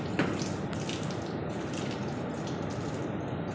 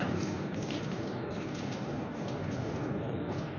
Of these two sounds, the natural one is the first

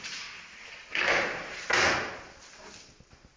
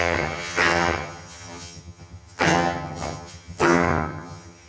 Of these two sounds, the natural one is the first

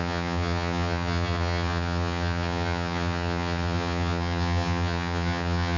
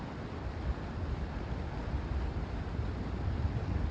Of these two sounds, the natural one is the second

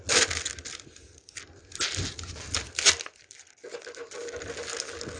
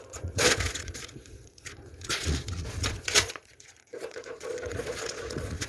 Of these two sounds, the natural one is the first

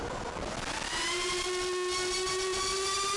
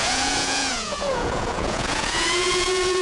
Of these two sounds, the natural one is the first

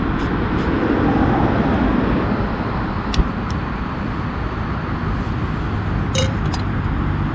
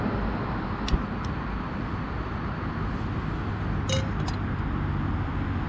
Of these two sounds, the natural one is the second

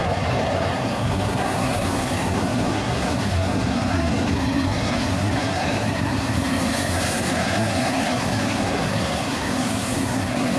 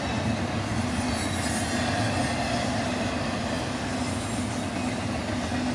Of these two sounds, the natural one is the second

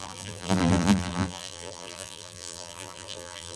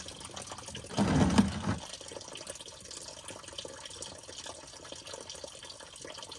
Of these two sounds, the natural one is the second